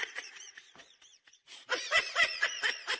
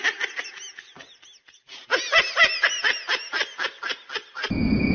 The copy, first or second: first